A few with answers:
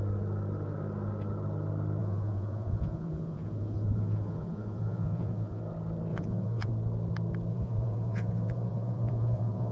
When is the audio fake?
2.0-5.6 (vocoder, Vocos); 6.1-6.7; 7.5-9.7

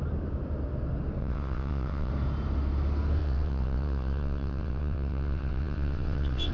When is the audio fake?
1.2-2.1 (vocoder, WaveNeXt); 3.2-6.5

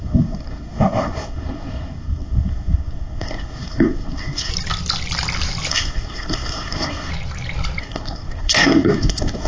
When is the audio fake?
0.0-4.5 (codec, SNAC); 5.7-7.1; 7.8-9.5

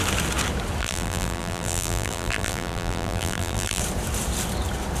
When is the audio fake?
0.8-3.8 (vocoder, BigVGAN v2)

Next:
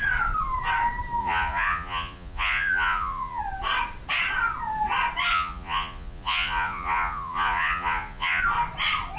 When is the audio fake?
1.2-3.4 (vocoder, Vocos); 5.3-8.4

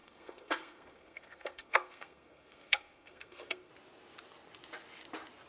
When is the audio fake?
0.0-3.7 (codec, SNAC)